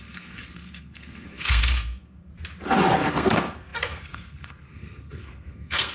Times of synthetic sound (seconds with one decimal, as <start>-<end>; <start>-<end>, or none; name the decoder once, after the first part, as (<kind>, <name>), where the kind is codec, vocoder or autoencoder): 0.0-2.3 (codec, SNAC); 3.1-5.9